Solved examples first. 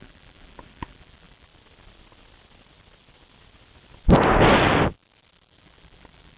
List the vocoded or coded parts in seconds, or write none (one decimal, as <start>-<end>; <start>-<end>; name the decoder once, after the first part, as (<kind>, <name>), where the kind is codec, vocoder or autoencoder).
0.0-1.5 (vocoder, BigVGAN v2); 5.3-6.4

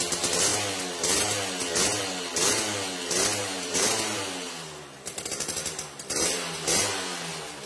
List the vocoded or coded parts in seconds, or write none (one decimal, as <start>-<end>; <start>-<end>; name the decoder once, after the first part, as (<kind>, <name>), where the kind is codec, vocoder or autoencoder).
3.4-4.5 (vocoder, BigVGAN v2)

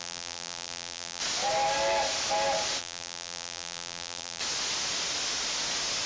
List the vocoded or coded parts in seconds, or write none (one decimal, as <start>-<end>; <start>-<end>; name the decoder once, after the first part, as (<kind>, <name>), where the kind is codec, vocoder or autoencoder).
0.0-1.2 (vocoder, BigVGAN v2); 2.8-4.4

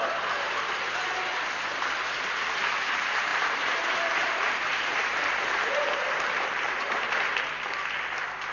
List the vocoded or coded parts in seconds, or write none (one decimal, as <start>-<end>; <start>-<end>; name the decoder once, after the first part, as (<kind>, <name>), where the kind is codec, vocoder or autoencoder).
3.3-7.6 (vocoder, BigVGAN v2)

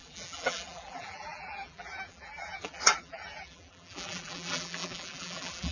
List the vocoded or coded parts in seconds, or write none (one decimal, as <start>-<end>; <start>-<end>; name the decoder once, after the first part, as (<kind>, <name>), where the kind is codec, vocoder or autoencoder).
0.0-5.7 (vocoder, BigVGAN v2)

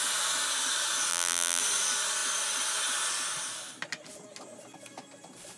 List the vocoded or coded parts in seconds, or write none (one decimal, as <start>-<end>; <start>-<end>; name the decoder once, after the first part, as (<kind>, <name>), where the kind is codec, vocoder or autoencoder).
1.1-1.6 (vocoder, BigVGAN v2)